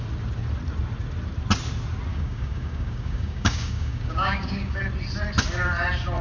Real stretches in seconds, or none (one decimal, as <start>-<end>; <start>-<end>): 0.0-2.1; 4.8-6.2